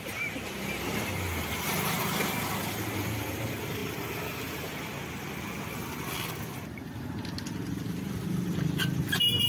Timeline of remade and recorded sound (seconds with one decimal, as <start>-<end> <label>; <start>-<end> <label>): 0.0-9.5 recorded